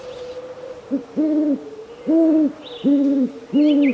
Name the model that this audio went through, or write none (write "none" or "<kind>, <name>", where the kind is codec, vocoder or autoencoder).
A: none